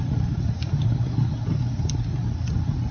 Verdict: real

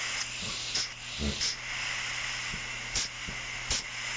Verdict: real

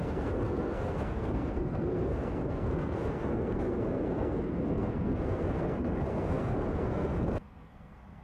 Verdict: fake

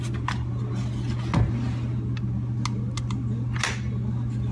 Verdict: real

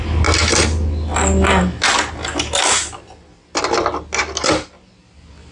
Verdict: real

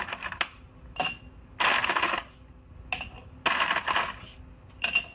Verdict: real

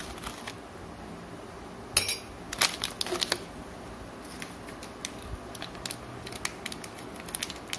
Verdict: real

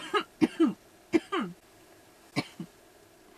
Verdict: real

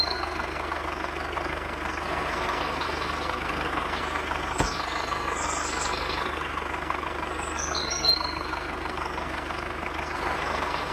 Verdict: fake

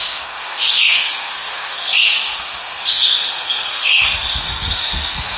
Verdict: fake